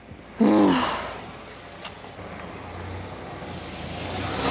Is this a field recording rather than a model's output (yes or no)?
yes